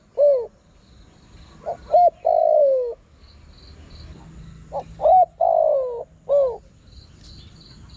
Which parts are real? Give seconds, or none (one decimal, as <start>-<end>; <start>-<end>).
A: 0.0-2.4; 3.3-8.0